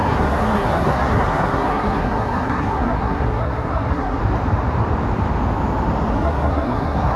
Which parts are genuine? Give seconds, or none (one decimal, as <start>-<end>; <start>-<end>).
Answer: 4.2-6.1